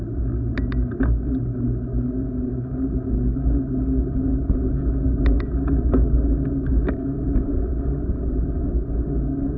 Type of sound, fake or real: real